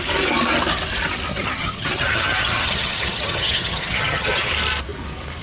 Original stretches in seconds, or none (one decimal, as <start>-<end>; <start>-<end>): 0.0-1.3; 4.5-5.4